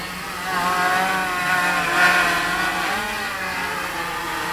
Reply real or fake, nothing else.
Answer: real